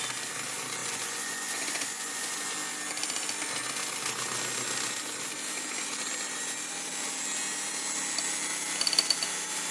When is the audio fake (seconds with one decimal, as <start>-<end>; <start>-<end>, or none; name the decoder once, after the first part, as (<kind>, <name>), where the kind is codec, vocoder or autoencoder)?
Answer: 0.8-2.5 (vocoder, Vocos)

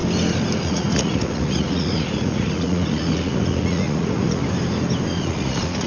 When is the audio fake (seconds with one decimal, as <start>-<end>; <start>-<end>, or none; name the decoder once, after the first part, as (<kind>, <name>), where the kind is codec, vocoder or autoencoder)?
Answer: 0.6-4.4 (vocoder, Vocos); 5.2-5.9

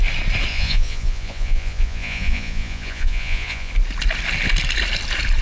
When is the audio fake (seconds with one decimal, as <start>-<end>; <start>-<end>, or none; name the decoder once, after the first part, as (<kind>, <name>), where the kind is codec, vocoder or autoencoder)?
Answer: 0.5-3.7 (vocoder, Vocos)

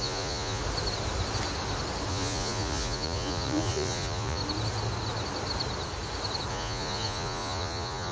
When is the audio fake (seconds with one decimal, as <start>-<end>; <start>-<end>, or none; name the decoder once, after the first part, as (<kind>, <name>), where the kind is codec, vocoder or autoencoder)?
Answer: 0.0-0.6 (vocoder, Vocos); 2.1-4.4; 6.5-8.1

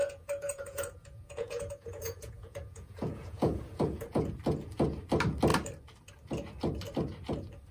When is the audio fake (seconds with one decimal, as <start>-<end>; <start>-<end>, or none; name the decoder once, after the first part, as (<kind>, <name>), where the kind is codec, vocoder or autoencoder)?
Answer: 0.0-4.3 (vocoder, Vocos)

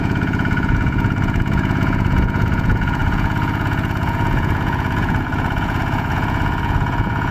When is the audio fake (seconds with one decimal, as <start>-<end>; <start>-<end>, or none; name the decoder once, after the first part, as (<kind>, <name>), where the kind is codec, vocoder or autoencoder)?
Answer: 0.0-7.3 (vocoder, Vocos)